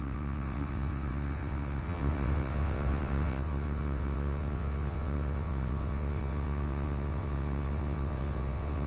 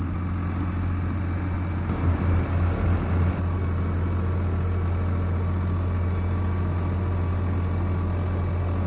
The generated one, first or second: first